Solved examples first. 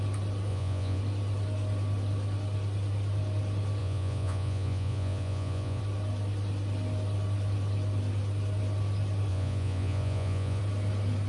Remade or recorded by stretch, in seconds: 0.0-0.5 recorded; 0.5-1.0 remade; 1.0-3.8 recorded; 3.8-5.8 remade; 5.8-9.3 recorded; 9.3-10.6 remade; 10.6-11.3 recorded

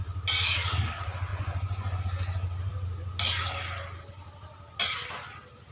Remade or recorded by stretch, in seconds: 0.0-1.3 recorded; 1.3-2.0 remade; 2.0-5.7 recorded